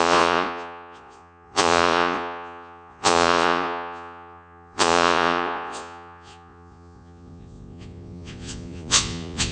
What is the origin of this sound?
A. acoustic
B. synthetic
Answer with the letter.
B